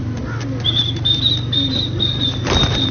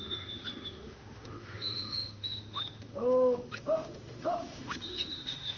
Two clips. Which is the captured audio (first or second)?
first